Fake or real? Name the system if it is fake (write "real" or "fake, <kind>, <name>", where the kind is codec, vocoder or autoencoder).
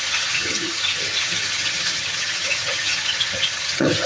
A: fake, vocoder, HiFi-GAN